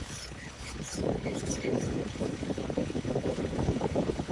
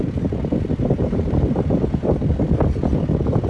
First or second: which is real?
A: second